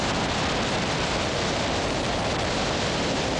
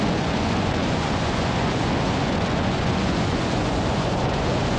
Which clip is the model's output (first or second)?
second